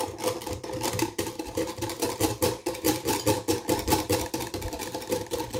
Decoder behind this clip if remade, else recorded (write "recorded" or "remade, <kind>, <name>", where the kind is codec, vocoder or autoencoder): remade, vocoder, BigVGAN v2